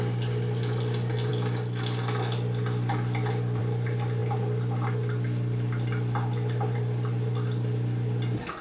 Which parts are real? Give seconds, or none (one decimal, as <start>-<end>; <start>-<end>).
0.0-8.6